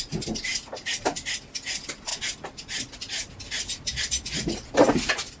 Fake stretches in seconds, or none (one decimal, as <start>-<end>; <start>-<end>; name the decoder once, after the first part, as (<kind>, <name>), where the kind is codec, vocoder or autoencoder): none